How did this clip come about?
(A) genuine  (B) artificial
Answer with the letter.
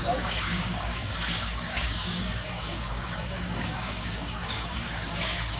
B